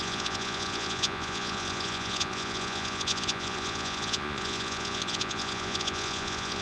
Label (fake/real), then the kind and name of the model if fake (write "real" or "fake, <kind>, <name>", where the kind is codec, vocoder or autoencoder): fake, vocoder, Vocos